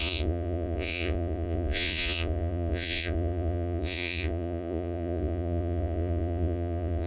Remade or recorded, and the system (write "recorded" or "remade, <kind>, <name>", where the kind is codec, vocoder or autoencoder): remade, vocoder, Vocos